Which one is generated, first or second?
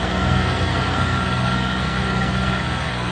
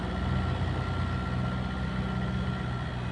first